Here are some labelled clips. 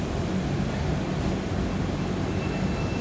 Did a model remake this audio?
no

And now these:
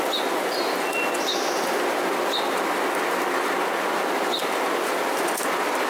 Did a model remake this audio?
no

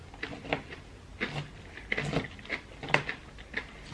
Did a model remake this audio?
no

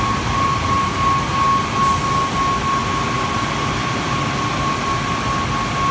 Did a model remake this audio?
no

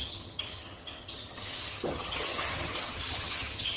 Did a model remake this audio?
yes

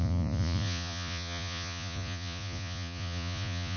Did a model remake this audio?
yes